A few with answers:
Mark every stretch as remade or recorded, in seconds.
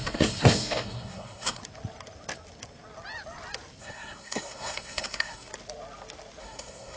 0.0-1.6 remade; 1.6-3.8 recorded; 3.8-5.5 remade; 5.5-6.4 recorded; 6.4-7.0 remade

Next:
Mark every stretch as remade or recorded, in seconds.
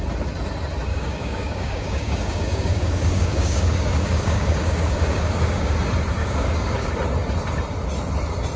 0.0-0.9 recorded; 0.9-5.7 remade; 5.7-6.2 recorded; 6.2-6.9 remade; 6.9-8.6 recorded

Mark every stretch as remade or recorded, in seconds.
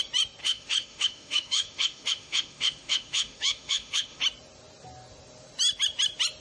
0.0-0.4 recorded; 0.4-4.2 remade; 4.2-6.4 recorded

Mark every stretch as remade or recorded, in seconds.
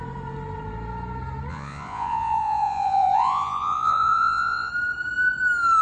0.0-1.5 recorded; 1.5-4.7 remade; 4.7-5.8 recorded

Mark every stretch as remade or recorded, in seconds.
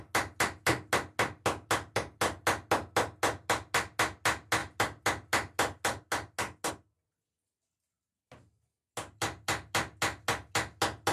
0.0-11.1 recorded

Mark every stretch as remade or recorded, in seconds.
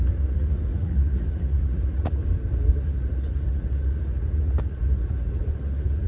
0.0-2.2 remade; 2.2-2.7 recorded; 2.7-6.1 remade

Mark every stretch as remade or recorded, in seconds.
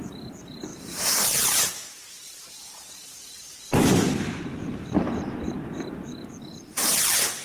0.0-0.7 recorded; 0.7-5.1 remade; 5.1-7.4 recorded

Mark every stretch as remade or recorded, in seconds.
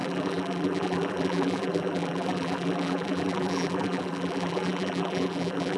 0.0-5.8 remade